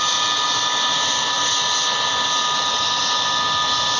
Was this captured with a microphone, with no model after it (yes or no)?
yes